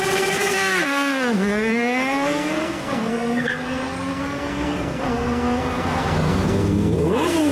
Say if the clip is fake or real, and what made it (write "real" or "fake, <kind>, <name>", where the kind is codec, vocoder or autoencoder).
fake, codec, SNAC